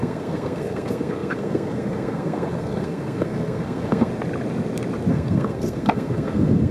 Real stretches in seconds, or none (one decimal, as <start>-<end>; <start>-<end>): 4.1-5.1